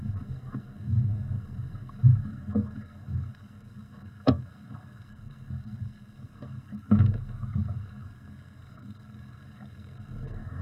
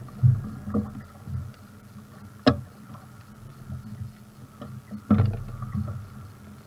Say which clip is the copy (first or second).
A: first